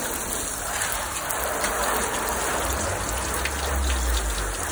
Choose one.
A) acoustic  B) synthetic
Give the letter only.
A